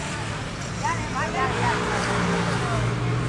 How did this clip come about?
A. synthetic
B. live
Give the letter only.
B